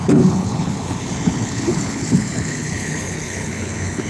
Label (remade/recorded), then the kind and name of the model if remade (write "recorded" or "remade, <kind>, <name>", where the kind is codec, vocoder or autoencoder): remade, codec, HILCodec